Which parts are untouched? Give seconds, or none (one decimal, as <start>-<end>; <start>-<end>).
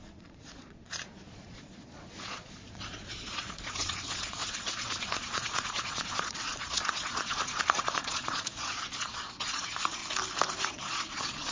10.0-10.5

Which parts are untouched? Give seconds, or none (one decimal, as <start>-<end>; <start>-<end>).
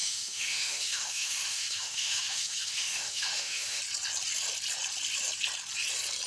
3.8-6.3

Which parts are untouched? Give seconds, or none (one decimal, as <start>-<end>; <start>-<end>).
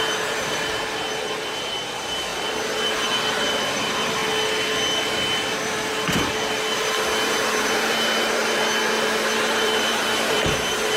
2.3-3.3; 4.2-7.2; 8.4-9.5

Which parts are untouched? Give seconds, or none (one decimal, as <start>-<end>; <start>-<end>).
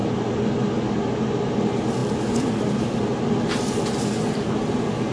0.0-5.1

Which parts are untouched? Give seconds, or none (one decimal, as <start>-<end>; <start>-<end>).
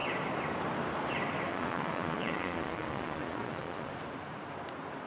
0.0-1.5; 3.9-5.1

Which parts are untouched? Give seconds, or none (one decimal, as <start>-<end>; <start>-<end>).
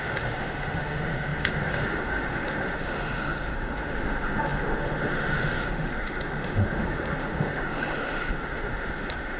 none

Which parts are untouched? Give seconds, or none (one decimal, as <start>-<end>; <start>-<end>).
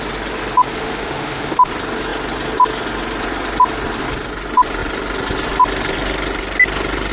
0.0-0.7; 1.7-7.1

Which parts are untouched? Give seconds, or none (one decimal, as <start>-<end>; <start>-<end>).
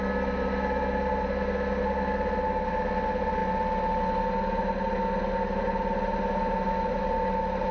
0.0-7.7